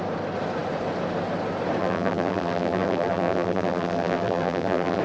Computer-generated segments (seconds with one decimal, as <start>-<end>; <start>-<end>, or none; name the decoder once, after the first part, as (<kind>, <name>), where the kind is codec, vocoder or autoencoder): 1.8-5.0 (vocoder, BigVGAN v2)